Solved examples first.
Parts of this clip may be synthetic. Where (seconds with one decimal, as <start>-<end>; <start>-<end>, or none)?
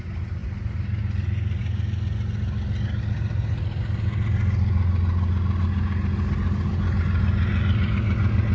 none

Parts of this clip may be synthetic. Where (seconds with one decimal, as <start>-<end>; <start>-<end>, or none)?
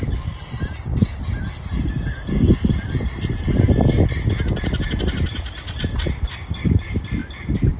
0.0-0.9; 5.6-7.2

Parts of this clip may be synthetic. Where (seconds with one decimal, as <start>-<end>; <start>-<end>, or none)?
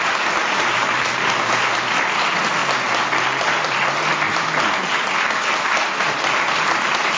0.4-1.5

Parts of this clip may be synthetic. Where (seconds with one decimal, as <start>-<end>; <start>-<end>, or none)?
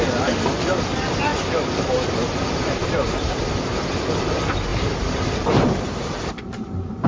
2.8-3.4; 4.7-7.1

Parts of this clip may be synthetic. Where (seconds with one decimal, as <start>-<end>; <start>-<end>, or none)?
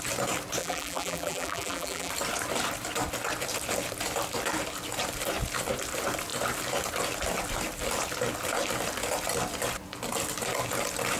0.6-2.1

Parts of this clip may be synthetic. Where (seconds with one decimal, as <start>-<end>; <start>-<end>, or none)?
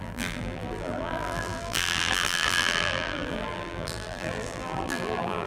0.0-5.5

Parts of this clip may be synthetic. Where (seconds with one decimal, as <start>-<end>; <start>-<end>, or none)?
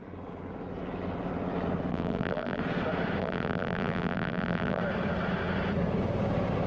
1.9-2.6; 3.2-4.8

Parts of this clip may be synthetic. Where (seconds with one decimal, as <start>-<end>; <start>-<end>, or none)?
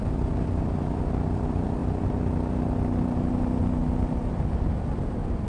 0.0-1.8; 5.1-5.5